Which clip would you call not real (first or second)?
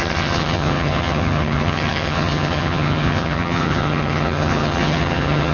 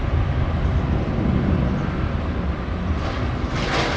first